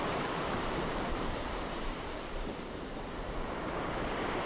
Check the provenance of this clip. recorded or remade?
remade